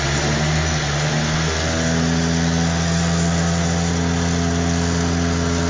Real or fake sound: real